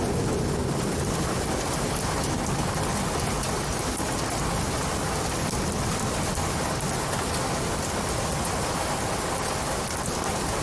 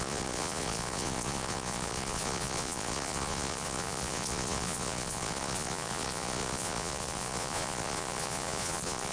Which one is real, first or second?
first